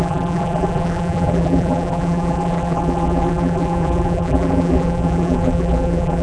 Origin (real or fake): fake